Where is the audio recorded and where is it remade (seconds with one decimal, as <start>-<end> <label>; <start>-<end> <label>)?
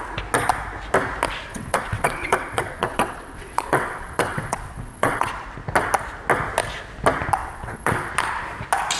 0.0-1.5 recorded; 1.5-5.3 remade; 5.3-7.4 recorded; 7.4-8.1 remade; 8.1-9.0 recorded